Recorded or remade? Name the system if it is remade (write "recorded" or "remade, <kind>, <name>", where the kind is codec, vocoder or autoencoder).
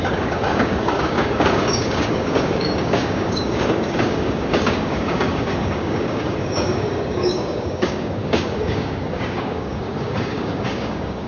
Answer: remade, codec, DAC